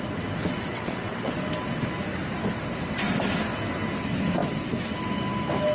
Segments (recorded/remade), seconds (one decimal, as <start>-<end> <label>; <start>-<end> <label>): 0.0-0.7 recorded; 0.7-1.3 remade; 1.3-5.7 recorded